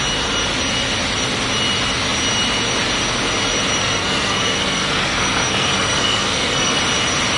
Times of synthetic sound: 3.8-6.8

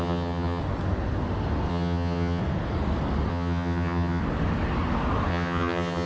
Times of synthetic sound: 0.0-0.6; 1.7-2.4; 3.3-4.2; 5.3-6.1

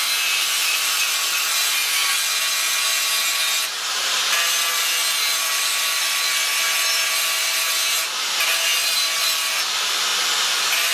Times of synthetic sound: none